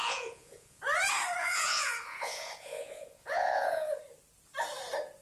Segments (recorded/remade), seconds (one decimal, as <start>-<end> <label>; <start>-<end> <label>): 0.0-0.8 remade; 0.8-1.4 recorded; 1.4-4.0 remade; 4.0-5.2 recorded